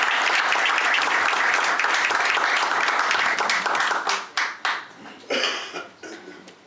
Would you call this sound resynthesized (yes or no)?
no